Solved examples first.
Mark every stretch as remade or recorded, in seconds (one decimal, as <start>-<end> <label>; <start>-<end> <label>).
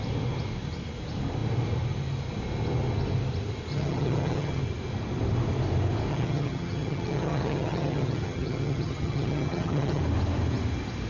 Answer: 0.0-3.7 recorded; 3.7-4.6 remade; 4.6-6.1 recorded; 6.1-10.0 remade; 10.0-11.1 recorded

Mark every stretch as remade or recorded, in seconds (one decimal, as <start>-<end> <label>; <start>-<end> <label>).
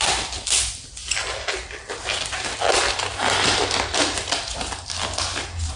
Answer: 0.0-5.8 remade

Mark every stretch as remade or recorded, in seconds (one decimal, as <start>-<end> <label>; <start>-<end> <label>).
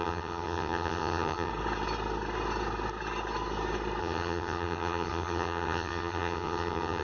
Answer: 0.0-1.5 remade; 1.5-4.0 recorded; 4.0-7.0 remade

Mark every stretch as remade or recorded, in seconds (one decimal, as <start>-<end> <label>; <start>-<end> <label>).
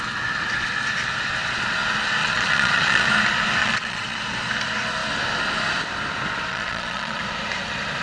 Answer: 0.0-2.2 recorded; 2.2-3.1 remade; 3.1-3.6 recorded; 3.6-4.2 remade; 4.2-6.5 recorded; 6.5-7.2 remade; 7.2-8.0 recorded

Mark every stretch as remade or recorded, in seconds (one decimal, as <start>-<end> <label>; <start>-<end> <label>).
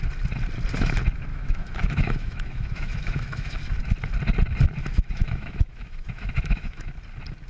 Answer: 0.0-1.3 recorded; 1.3-3.8 remade; 3.8-4.8 recorded; 4.8-6.9 remade; 6.9-7.5 recorded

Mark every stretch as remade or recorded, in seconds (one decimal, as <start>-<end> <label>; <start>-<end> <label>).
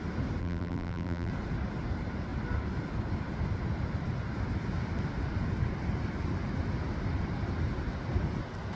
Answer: 0.0-0.4 recorded; 0.4-1.3 remade; 1.3-8.8 recorded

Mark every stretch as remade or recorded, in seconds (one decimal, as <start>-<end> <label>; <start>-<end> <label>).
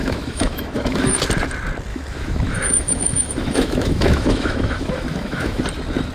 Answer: 0.0-1.2 remade; 1.2-1.9 recorded; 1.9-5.6 remade; 5.6-6.1 recorded